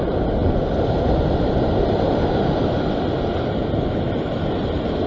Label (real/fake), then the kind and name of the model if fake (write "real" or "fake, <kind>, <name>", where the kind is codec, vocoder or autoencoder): real